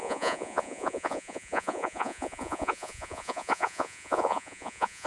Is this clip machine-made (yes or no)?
yes